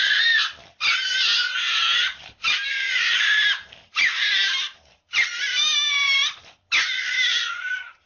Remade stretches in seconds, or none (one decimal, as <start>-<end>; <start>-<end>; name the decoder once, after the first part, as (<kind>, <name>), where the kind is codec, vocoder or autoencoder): 1.6-6.5 (vocoder, BigVGAN v2); 7.3-8.1

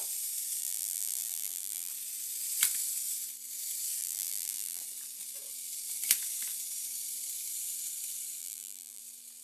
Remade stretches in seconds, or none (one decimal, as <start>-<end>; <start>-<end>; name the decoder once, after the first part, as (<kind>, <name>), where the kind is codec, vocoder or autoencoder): 0.6-1.9 (vocoder, BigVGAN v2); 4.0-4.8; 8.4-9.0

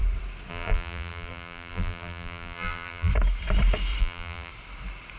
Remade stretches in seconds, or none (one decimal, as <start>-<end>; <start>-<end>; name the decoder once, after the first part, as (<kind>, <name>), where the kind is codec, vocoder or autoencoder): 0.5-3.1 (vocoder, BigVGAN v2); 4.0-4.5

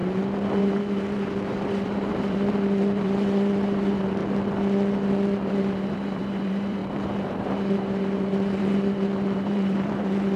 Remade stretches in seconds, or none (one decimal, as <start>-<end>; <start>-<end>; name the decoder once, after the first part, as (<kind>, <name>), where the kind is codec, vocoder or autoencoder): 0.6-4.2 (vocoder, BigVGAN v2); 5.4-10.4

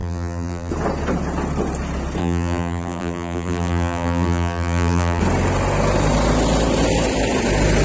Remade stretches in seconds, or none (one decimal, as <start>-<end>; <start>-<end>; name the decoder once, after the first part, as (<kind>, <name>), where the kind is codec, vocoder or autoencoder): 0.0-0.7 (vocoder, BigVGAN v2); 2.2-5.2